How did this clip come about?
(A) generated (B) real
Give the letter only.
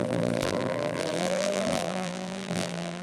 A